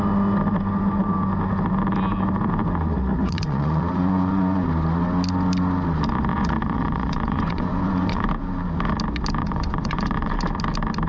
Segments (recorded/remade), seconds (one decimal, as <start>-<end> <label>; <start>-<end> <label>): 0.0-3.2 recorded; 3.2-4.7 remade; 4.7-6.3 recorded; 6.3-8.3 remade; 8.3-9.4 recorded; 9.4-10.3 remade; 10.3-11.1 recorded